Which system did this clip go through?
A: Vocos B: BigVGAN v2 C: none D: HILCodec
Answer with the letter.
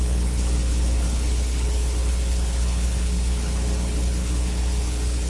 D